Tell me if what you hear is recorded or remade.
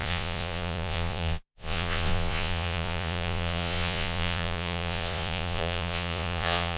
remade